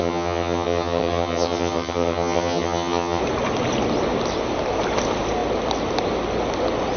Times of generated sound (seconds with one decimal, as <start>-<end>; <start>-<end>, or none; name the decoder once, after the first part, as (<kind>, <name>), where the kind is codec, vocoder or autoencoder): 0.0-3.2 (vocoder, HiFi-GAN)